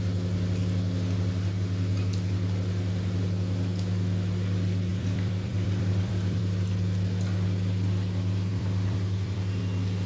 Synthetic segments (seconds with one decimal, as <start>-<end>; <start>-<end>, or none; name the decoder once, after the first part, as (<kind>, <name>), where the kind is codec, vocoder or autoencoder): 4.9-6.4 (vocoder, BigVGAN v2); 8.5-9.6